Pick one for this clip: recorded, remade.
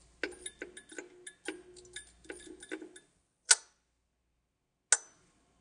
recorded